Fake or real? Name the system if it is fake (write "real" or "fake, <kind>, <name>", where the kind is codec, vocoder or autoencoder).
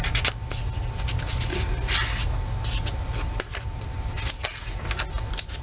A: real